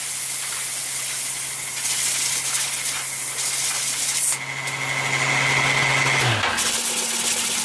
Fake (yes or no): no